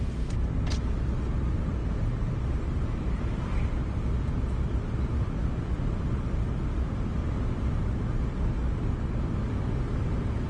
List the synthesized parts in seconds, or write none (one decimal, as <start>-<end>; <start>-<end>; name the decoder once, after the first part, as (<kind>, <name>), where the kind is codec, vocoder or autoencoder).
1.8-2.6 (vocoder, BigVGAN v2)